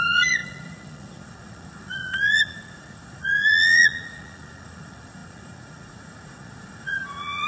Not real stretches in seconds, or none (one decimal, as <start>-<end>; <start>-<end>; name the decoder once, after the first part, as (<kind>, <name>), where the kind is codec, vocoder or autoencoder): 0.0-7.5 (vocoder, Vocos)